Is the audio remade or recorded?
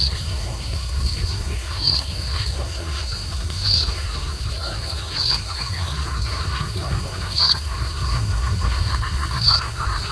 remade